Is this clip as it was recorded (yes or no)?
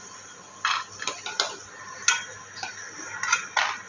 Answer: yes